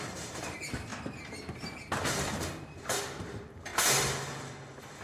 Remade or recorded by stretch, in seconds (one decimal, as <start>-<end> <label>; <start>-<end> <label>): 0.0-3.7 remade; 3.7-4.2 recorded; 4.2-5.0 remade